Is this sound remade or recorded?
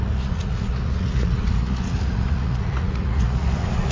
remade